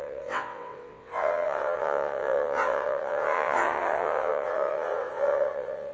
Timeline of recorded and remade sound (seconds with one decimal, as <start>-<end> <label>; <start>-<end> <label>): 0.0-5.9 remade